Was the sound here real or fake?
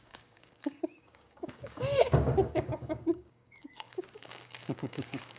fake